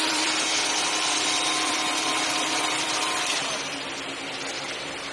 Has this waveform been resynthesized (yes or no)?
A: yes